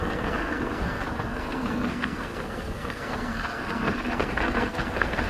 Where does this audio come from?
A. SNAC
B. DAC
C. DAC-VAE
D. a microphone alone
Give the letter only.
A